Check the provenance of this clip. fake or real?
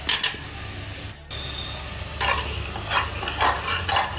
real